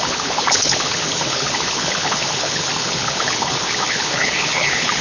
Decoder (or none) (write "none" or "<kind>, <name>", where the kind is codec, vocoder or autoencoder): codec, HILCodec